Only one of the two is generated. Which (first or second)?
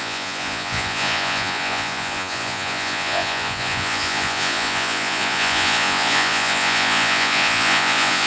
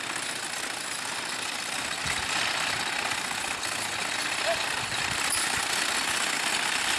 first